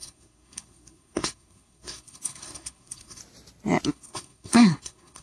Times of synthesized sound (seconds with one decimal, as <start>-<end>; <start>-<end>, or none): 0.0-3.2; 3.9-5.2